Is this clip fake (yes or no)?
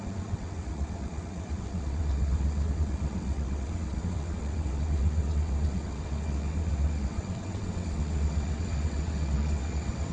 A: yes